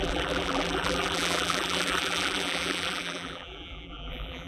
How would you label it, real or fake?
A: fake